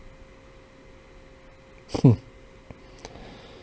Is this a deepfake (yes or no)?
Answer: no